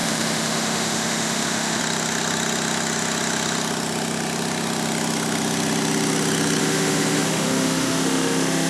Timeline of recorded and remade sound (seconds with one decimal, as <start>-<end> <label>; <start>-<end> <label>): 0.0-1.8 remade; 1.8-6.6 recorded; 6.6-8.7 remade